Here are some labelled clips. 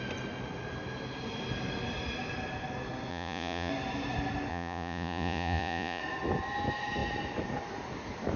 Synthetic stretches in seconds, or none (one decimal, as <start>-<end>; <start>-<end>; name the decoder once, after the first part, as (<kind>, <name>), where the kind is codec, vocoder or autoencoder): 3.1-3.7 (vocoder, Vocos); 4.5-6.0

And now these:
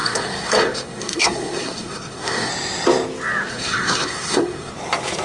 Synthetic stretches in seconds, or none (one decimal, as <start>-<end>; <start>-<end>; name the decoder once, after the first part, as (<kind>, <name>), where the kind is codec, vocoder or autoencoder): 0.0-2.5 (codec, SNAC); 3.5-4.7

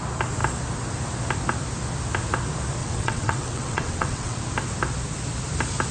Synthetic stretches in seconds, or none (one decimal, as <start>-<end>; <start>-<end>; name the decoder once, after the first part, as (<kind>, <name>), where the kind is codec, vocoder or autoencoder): 2.8-4.4 (vocoder, WaveNeXt)

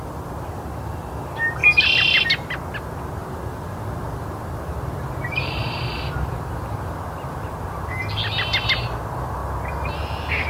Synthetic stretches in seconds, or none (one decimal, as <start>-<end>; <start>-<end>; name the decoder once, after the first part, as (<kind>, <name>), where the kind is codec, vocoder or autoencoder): 3.2-8.0 (vocoder, BigVGAN v2)

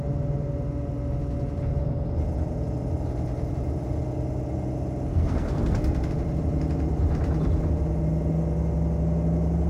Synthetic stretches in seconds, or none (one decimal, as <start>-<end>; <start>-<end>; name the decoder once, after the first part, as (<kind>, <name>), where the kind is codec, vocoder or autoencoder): 5.1-6.1 (codec, SNAC)